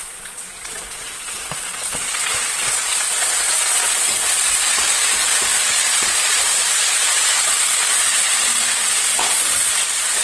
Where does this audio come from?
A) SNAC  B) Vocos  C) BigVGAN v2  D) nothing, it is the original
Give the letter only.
B